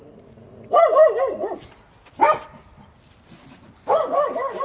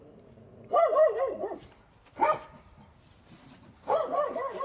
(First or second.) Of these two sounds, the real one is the first